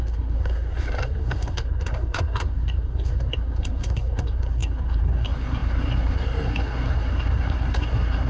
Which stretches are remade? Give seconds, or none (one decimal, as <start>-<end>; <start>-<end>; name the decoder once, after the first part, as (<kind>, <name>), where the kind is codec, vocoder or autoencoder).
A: 0.0-8.3 (codec, SNAC)

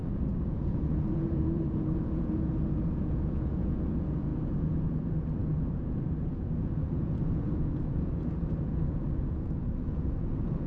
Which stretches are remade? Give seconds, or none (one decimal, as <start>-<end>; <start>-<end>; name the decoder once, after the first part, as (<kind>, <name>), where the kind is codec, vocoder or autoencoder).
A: 0.0-10.7 (vocoder, Vocos)

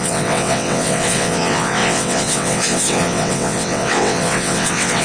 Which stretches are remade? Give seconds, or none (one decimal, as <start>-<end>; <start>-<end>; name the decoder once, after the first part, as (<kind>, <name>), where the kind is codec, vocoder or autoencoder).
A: 0.0-5.0 (vocoder, WaveNeXt)